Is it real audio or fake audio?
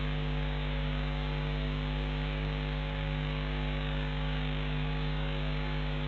fake